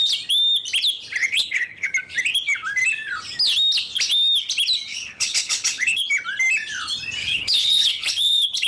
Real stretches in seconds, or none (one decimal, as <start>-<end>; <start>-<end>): 0.0-1.2; 1.9-4.9; 6.1-7.2